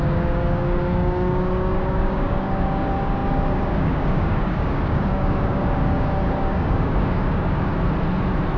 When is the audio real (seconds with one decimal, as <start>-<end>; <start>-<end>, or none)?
7.7-8.6